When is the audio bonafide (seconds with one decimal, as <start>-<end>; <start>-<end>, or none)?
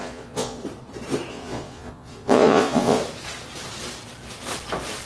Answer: 0.6-1.3; 3.0-5.1